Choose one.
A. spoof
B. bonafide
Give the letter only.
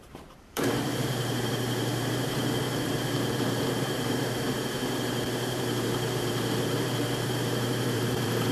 A